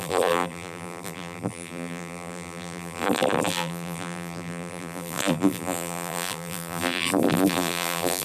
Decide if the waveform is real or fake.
fake